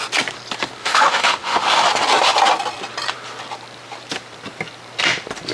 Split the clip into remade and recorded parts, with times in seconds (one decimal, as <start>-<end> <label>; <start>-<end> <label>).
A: 0.0-0.8 recorded; 0.8-1.9 remade; 1.9-5.5 recorded